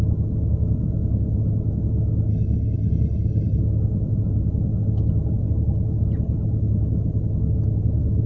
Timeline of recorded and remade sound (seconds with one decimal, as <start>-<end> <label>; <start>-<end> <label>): 0.0-2.3 recorded; 2.3-3.6 remade; 3.6-8.3 recorded